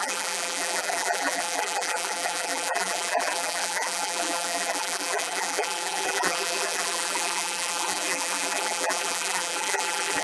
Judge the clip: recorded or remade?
remade